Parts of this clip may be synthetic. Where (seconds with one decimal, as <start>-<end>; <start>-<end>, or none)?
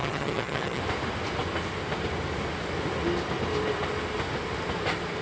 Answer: 0.0-0.8